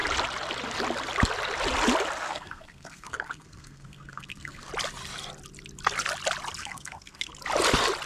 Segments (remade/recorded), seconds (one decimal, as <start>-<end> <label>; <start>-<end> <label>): 0.0-2.2 recorded; 2.2-4.7 remade; 4.7-6.6 recorded; 6.6-7.3 remade; 7.3-8.1 recorded